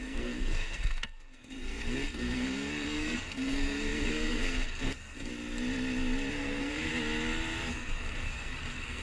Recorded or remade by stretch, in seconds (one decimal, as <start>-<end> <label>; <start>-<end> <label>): 0.0-5.3 remade; 5.3-6.3 recorded; 6.3-6.9 remade; 6.9-7.7 recorded; 7.7-9.0 remade